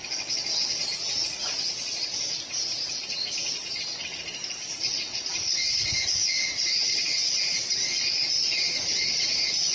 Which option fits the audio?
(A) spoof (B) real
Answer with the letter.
B